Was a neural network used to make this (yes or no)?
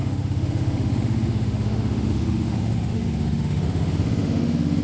yes